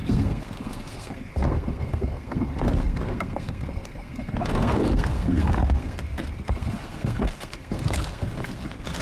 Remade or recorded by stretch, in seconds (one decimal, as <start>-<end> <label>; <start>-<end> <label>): 0.0-9.0 remade